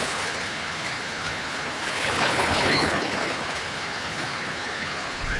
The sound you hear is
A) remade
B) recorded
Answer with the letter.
A